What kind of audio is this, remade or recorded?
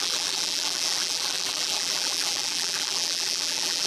remade